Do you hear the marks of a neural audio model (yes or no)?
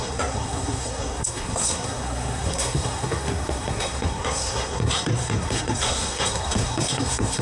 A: yes